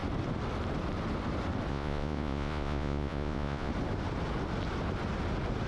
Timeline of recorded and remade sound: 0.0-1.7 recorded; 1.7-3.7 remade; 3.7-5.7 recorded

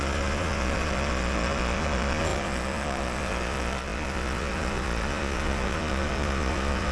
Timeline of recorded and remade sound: 0.0-6.9 remade

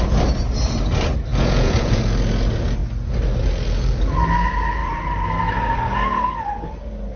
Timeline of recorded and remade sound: 0.0-1.3 recorded; 1.3-2.0 remade; 2.0-7.2 recorded

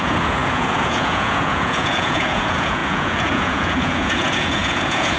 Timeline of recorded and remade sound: 0.0-5.2 remade